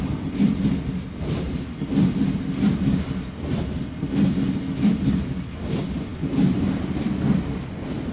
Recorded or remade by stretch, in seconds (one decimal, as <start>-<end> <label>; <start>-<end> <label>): 0.0-8.1 recorded